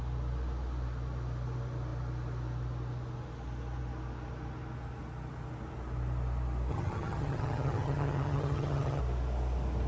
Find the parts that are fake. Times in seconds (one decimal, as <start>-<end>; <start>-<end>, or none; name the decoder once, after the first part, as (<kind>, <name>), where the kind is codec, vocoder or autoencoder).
6.7-9.0 (vocoder, HiFi-GAN)

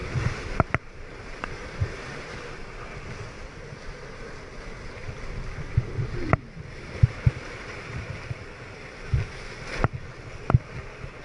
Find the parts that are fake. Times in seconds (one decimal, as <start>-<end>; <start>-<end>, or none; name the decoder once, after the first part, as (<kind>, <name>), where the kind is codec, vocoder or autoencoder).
0.0-2.4 (vocoder, BigVGAN v2)

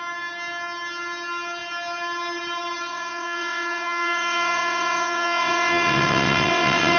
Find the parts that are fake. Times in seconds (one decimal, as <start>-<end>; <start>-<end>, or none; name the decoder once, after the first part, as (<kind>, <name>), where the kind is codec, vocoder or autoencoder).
2.9-7.0 (vocoder, WaveNeXt)

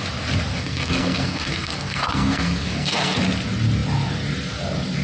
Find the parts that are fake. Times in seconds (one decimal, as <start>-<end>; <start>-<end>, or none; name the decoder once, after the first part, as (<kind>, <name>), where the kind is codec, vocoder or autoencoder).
0.5-3.2 (codec, SNAC)

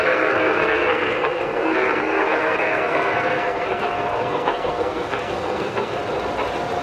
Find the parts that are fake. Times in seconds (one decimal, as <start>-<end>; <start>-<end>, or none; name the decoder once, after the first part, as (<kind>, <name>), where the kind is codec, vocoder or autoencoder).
0.0-6.0 (codec, SNAC)